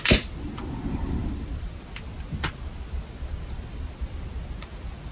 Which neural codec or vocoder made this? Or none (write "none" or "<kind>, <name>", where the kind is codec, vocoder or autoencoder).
none